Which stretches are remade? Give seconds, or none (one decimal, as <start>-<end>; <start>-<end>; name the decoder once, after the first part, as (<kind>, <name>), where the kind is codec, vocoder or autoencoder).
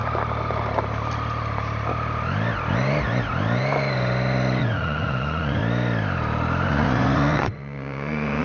4.6-5.6 (vocoder, Vocos); 6.7-8.4